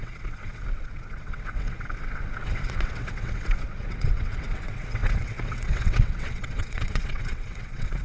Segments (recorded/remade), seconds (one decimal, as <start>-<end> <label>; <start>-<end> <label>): 0.0-8.0 remade